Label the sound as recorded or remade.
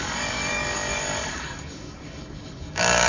remade